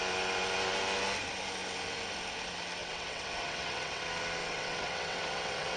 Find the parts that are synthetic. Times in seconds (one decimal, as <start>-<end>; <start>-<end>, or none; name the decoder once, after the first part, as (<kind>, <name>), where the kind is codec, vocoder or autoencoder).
2.8-4.0 (vocoder, WaveNeXt); 4.4-5.8